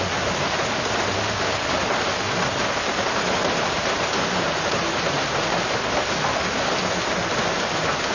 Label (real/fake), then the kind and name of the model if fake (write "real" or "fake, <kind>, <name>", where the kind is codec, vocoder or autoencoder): real